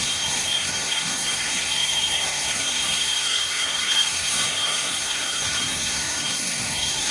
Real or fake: fake